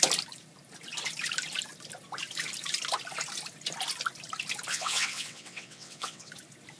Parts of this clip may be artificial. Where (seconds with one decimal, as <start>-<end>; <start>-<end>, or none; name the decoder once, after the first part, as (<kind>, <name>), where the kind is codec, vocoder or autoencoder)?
4.7-6.3 (vocoder, WaveNeXt)